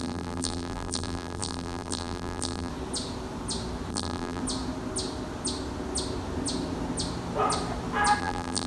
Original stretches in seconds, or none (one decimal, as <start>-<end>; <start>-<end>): 2.7-3.9; 4.4-8.2

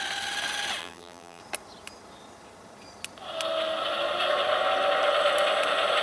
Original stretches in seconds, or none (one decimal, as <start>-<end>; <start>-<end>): 0.0-0.8; 1.4-6.0

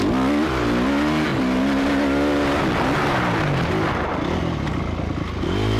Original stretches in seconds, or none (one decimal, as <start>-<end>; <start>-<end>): 0.0-5.8

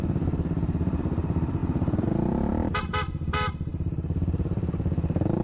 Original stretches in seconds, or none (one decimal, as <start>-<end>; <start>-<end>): none

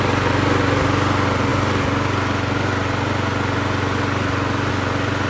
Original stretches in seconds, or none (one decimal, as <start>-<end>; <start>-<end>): 0.0-5.3